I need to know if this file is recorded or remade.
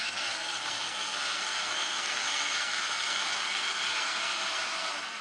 remade